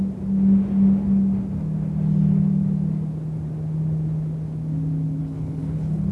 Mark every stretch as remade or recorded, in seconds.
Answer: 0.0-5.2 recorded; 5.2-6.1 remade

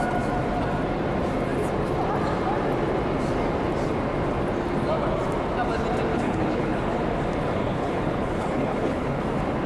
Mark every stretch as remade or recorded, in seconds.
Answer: 0.0-6.1 recorded; 6.1-7.0 remade; 7.0-7.6 recorded; 7.6-9.2 remade; 9.2-9.7 recorded